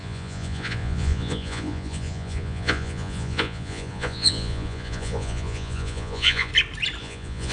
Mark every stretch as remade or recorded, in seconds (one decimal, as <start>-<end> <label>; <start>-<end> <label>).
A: 0.0-6.5 remade; 6.5-7.0 recorded; 7.0-7.5 remade